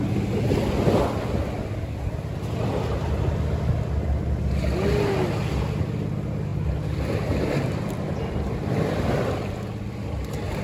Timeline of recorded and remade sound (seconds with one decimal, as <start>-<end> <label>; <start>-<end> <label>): 0.0-10.6 recorded